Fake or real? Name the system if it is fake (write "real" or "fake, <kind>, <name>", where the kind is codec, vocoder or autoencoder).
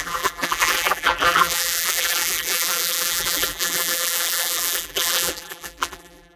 fake, vocoder, BigVGAN v2